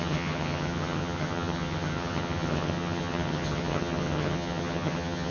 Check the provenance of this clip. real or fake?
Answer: fake